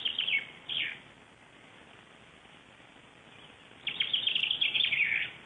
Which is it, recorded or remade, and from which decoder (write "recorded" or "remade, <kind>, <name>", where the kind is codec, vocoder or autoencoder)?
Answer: recorded